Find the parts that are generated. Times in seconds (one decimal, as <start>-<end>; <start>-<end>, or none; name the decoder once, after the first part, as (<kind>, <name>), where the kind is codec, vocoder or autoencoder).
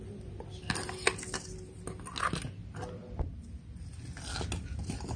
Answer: none